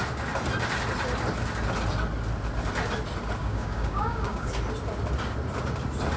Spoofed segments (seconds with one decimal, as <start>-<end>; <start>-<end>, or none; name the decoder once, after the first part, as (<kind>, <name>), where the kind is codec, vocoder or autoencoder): 3.4-4.5 (codec, DAC)